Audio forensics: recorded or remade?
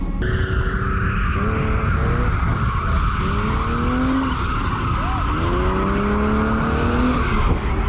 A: recorded